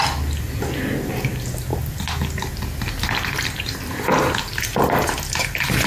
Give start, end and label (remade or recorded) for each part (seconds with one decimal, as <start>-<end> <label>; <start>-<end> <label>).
0.0-5.9 recorded